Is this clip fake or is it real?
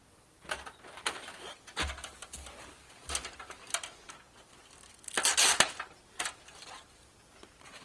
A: real